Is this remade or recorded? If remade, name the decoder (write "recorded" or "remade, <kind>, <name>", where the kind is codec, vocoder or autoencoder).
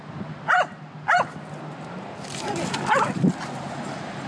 recorded